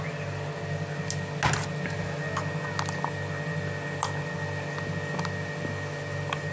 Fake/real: real